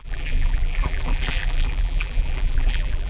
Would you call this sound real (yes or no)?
no